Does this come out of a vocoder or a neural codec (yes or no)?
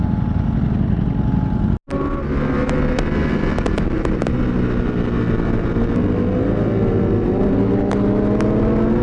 no